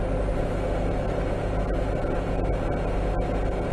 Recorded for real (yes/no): yes